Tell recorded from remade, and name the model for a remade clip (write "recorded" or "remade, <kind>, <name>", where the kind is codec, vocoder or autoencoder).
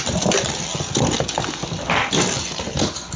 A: recorded